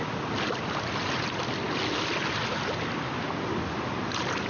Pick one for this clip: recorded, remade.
recorded